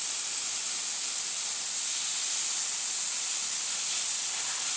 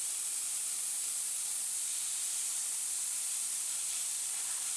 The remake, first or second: second